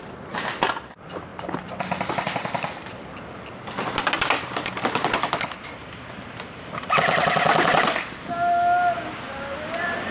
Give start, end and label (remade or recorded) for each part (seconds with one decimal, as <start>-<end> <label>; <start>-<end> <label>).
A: 0.0-10.1 recorded